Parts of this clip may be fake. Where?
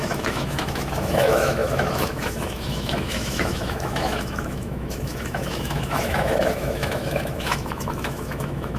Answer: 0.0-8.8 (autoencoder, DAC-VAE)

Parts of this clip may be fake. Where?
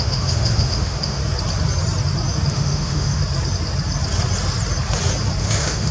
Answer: 0.0-1.2 (autoencoder, DAC-VAE); 2.5-3.2; 5.4-5.9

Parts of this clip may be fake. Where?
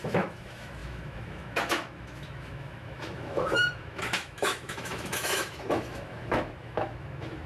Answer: 0.0-7.5 (autoencoder, DAC-VAE)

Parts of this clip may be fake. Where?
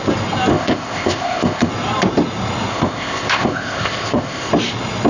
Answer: 0.5-1.7 (codec, ZipCodec); 2.7-4.5